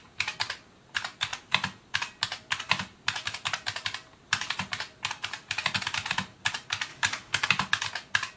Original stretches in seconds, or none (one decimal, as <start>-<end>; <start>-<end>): 0.0-6.9; 7.5-8.4